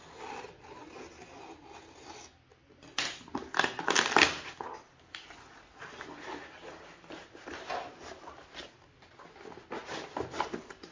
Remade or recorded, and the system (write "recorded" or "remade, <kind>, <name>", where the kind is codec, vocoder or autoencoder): recorded